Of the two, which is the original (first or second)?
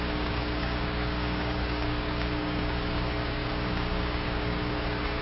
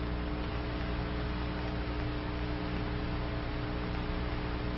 second